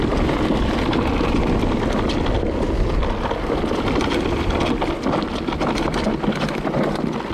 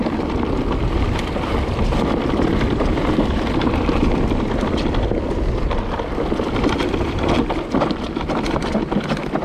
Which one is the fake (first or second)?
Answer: second